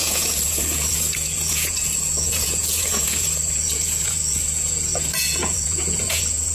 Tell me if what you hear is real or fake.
fake